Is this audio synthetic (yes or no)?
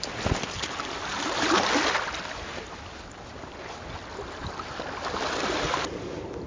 no